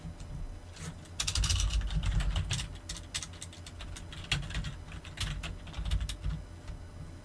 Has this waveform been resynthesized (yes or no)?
no